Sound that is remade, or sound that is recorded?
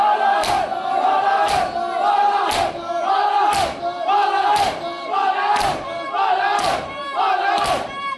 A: recorded